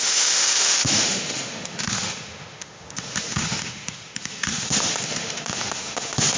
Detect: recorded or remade remade